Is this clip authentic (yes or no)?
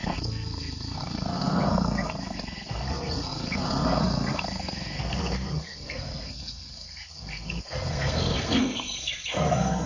no